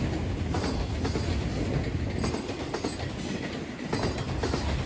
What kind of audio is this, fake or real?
real